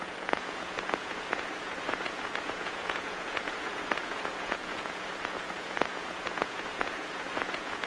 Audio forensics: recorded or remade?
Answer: remade